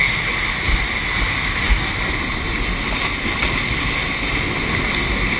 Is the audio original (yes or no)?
yes